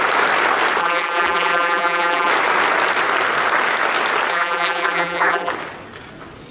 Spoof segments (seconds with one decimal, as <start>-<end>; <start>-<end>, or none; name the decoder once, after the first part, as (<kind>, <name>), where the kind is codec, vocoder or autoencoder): 0.8-2.3 (vocoder, BigVGAN v2); 4.3-5.5